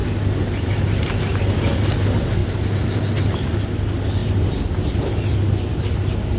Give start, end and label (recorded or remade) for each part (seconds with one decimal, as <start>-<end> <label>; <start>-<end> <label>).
0.0-6.4 recorded

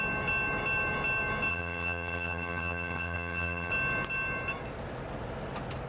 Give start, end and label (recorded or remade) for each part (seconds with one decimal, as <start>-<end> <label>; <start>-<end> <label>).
0.0-1.5 recorded; 1.5-3.7 remade; 3.7-5.9 recorded

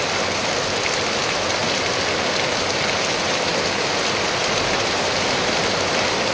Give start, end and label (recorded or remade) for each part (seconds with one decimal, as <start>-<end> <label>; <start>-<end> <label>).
0.0-6.3 recorded

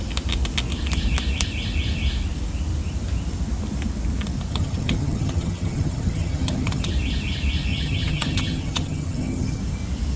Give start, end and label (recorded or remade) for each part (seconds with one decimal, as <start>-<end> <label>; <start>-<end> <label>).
0.0-4.5 recorded; 4.5-6.9 remade; 6.9-7.7 recorded; 7.7-9.6 remade; 9.6-10.2 recorded